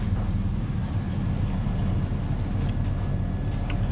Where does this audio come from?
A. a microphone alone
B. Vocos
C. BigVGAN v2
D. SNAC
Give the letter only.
A